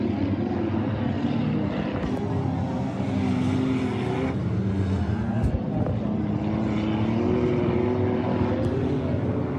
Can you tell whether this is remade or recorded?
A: recorded